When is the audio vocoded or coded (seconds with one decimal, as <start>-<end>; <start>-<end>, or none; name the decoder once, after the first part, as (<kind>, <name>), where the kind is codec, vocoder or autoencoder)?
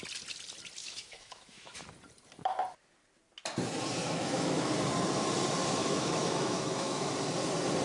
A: 0.8-1.8 (autoencoder, DAC-VAE); 4.0-4.7; 5.8-7.1